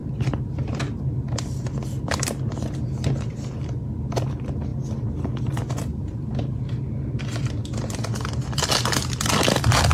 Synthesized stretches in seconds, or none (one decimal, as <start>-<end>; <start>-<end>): 5.9-6.6